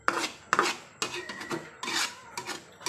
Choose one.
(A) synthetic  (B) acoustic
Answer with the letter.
B